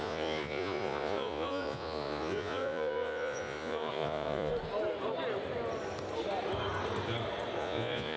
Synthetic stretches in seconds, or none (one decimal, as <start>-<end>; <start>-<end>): 0.0-4.5; 7.6-8.2